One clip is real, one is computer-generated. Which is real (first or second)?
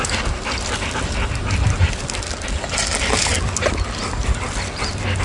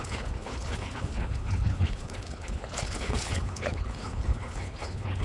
first